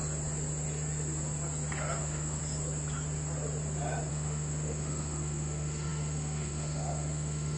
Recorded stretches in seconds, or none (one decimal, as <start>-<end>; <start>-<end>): 0.0-2.0; 2.4-4.1